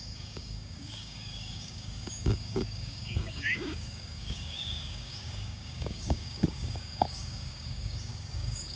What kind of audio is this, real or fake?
fake